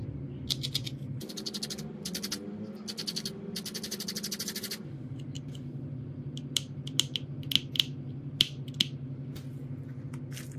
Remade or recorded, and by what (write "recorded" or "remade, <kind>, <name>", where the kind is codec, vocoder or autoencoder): recorded